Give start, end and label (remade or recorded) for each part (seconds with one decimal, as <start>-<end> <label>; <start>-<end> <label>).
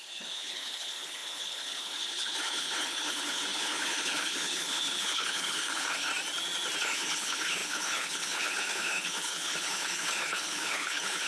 0.0-6.1 remade; 6.1-6.8 recorded; 6.8-11.3 remade